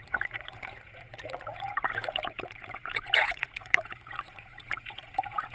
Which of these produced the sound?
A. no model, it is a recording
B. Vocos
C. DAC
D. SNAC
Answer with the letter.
B